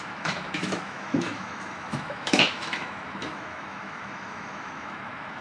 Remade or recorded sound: remade